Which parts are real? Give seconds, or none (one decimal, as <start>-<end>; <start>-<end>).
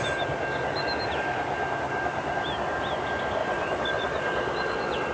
0.0-3.4